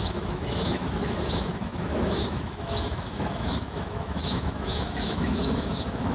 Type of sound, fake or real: fake